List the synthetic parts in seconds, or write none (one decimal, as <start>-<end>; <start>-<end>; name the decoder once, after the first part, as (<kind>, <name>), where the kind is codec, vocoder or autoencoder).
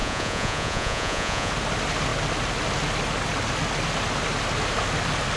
0.0-1.5 (vocoder, Vocos)